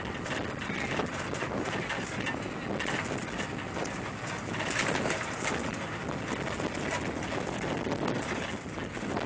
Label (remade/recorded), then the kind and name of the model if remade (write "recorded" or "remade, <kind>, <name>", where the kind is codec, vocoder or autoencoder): recorded